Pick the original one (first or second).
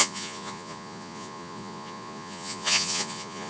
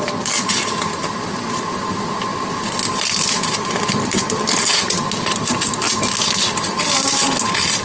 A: second